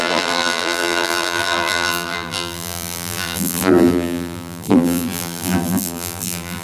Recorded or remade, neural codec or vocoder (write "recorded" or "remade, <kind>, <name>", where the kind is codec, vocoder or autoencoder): remade, vocoder, BigVGAN v2